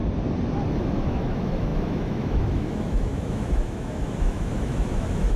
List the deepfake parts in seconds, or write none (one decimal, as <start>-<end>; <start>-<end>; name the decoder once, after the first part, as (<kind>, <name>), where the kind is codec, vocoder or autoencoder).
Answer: 0.8-5.4 (autoencoder, DAC-VAE)